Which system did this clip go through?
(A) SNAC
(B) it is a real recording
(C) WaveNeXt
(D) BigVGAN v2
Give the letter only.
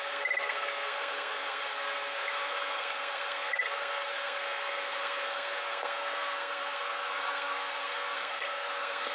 A